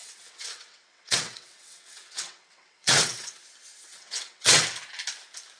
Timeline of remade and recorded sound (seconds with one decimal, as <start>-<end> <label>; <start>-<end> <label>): 0.0-3.4 remade; 3.4-3.9 recorded; 3.9-4.6 remade; 4.6-5.6 recorded